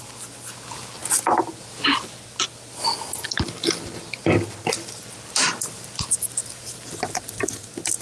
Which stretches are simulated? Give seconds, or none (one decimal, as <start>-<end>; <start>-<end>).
none